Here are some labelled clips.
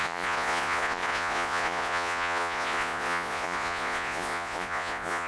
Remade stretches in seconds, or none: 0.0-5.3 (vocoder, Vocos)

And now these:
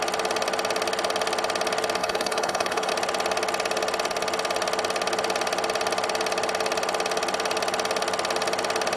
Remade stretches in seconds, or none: 2.0-2.9 (codec, HILCodec)

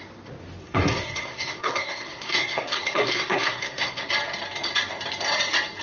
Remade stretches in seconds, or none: 0.6-4.1 (codec, SNAC)

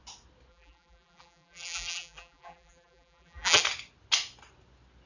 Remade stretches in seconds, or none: 0.5-3.6 (vocoder, BigVGAN v2)

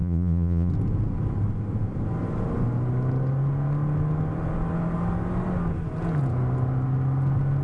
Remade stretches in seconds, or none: 0.0-0.7 (vocoder, Vocos)

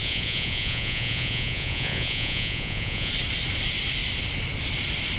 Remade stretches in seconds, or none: 0.0-3.1 (vocoder, Vocos)

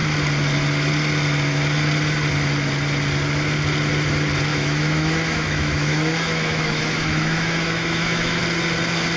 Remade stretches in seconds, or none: 4.5-8.4 (autoencoder, DAC-VAE)

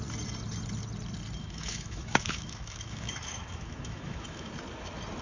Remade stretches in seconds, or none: 1.4-4.5 (autoencoder, DAC-VAE)